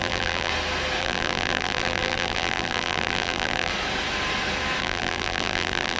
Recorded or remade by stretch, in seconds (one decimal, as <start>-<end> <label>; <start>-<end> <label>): 0.0-0.5 remade; 0.5-1.0 recorded; 1.0-3.7 remade; 3.7-4.8 recorded; 4.8-6.0 remade